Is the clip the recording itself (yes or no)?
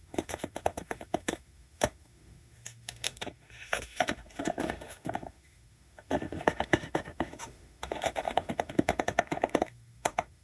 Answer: no